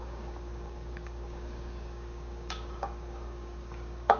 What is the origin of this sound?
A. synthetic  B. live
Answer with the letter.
A